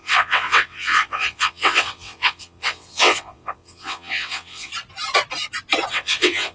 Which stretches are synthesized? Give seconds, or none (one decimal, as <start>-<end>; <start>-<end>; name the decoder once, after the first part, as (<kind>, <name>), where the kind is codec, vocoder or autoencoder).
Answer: 0.0-4.7 (vocoder, WaveNeXt); 5.9-6.5